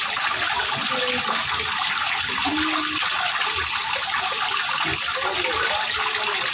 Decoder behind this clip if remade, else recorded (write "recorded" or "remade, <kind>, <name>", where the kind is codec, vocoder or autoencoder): recorded